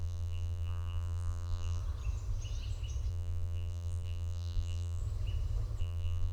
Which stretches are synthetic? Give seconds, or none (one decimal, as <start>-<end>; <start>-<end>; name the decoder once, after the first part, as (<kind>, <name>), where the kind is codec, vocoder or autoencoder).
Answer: 0.0-1.8 (vocoder, BigVGAN v2); 3.1-5.0; 5.8-6.3